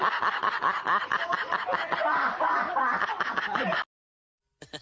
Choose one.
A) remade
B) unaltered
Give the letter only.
B